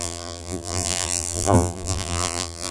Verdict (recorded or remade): remade